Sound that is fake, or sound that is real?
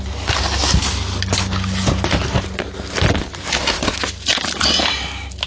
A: real